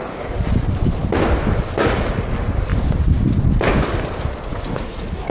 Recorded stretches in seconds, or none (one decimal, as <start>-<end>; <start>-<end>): 0.0-1.8; 2.3-4.5